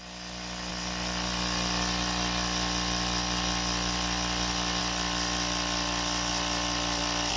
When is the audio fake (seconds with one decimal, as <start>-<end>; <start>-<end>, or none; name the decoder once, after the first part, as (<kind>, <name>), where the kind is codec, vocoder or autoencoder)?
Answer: none